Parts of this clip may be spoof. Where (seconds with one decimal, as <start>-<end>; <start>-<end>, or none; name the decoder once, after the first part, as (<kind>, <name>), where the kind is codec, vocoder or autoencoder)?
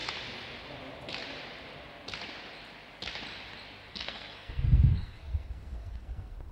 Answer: 3.9-6.5 (codec, SNAC)